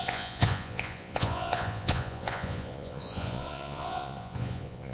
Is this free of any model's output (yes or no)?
no